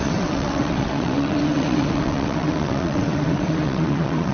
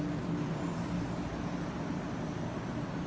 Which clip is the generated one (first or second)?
first